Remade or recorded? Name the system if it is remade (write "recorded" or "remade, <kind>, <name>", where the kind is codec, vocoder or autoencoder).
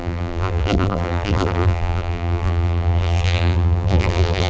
remade, vocoder, BigVGAN v2